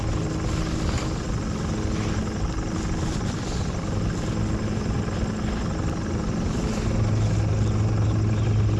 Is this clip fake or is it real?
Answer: real